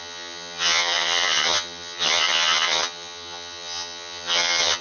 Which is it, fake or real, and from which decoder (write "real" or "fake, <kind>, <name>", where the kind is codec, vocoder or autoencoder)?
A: fake, vocoder, HiFi-GAN